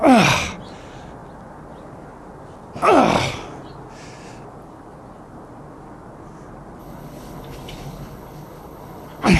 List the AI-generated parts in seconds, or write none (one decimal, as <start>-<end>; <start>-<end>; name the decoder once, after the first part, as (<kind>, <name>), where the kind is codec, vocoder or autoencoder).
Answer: 6.8-9.4 (codec, HILCodec)

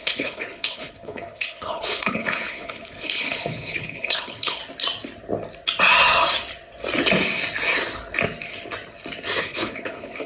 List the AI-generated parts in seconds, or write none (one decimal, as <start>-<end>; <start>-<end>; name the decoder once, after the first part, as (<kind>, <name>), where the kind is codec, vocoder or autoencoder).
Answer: 0.0-4.6 (codec, HILCodec); 9.4-10.3

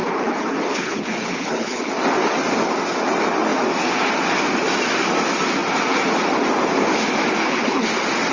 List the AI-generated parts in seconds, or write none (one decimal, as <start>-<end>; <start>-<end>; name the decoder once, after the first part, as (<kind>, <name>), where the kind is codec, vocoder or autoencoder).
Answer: 0.0-1.9 (codec, HILCodec); 7.4-7.9

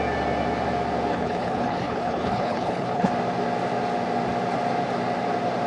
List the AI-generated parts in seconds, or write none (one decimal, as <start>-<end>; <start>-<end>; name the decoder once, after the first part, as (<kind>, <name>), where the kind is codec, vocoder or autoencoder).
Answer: 1.1-3.1 (codec, HILCodec)